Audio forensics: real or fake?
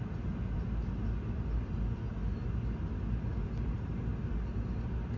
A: real